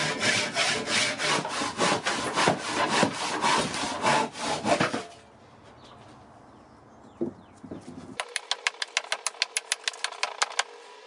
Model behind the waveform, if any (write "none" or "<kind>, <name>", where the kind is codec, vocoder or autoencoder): none